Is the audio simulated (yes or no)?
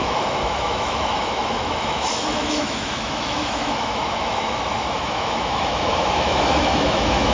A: yes